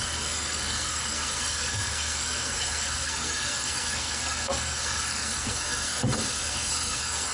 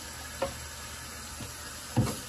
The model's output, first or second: first